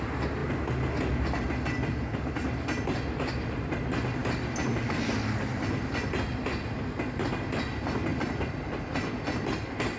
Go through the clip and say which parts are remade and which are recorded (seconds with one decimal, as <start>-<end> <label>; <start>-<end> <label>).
0.0-10.0 recorded